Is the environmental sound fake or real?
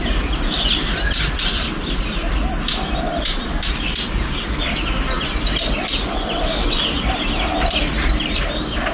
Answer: real